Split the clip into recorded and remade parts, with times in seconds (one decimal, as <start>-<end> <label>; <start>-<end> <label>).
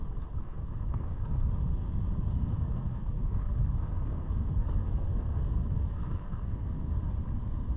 0.0-0.4 recorded; 0.4-1.5 remade; 1.5-2.3 recorded; 2.3-7.0 remade; 7.0-7.8 recorded